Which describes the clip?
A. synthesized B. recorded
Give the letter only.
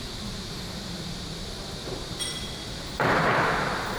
A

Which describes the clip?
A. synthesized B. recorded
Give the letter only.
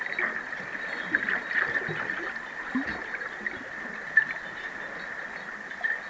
B